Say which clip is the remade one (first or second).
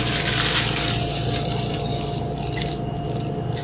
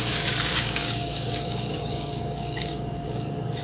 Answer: second